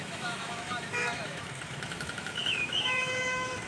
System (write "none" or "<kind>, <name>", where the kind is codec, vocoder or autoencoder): autoencoder, DAC-VAE